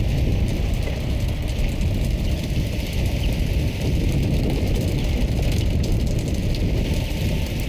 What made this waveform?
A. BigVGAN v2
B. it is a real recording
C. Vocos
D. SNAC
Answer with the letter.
B